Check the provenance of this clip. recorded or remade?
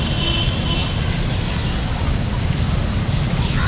recorded